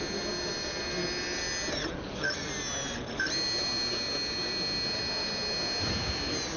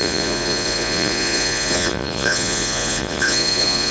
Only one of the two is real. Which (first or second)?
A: first